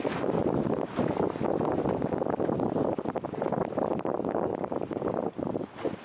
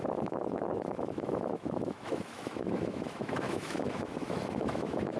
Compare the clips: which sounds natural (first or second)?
first